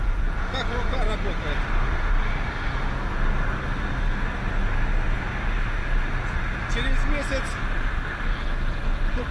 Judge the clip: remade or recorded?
recorded